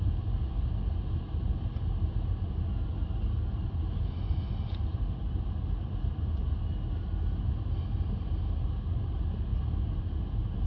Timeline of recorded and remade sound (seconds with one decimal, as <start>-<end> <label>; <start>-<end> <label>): 0.0-10.7 recorded